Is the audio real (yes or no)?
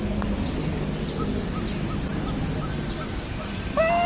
yes